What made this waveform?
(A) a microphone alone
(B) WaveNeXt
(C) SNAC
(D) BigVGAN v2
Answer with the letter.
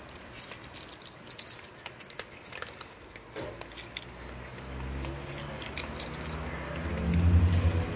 A